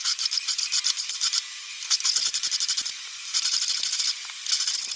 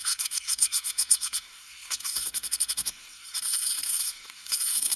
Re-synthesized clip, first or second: second